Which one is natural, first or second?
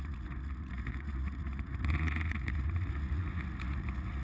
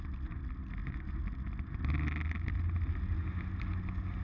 second